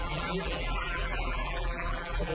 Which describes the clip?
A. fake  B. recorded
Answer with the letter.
A